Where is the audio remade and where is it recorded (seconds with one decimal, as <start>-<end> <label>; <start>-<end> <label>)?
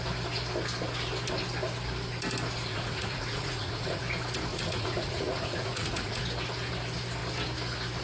0.0-2.7 recorded; 2.7-4.0 remade; 4.0-4.5 recorded; 4.5-6.2 remade; 6.2-8.0 recorded